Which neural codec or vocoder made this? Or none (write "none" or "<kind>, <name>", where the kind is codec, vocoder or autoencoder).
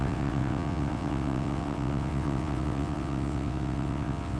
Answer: vocoder, WaveNeXt